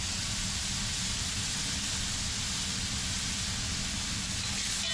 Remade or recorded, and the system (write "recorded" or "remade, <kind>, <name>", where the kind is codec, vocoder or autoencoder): recorded